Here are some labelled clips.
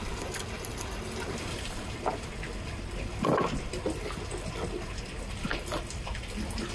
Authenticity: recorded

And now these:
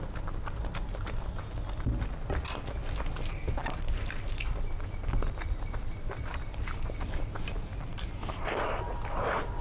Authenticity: recorded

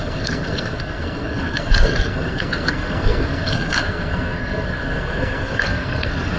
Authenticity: remade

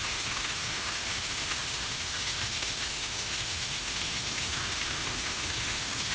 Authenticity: remade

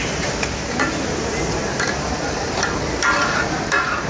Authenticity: remade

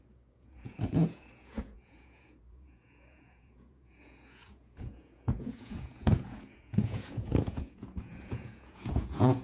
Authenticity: remade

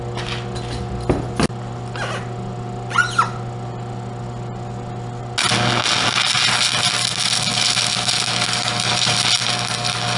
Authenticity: recorded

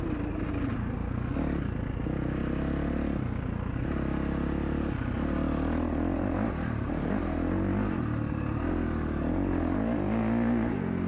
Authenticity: recorded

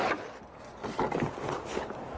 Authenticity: recorded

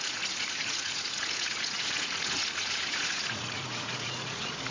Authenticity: remade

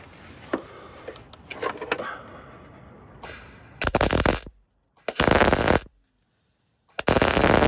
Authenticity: recorded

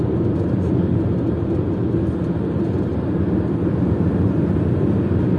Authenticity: recorded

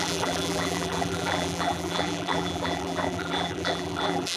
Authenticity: remade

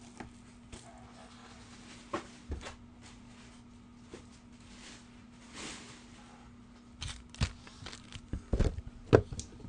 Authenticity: recorded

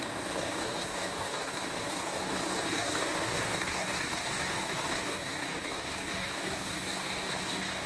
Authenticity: remade